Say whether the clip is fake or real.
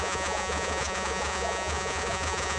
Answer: fake